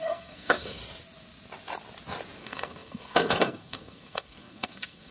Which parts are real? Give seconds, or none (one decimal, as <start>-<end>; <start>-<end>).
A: 0.8-2.4